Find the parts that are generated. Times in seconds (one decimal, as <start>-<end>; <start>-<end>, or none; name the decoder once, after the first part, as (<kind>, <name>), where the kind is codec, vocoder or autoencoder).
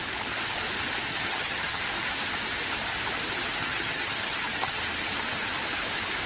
1.1-1.8 (vocoder, HiFi-GAN); 3.6-4.8